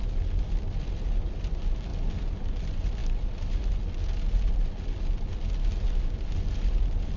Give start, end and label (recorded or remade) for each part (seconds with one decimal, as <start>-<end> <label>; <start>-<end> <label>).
0.0-7.2 recorded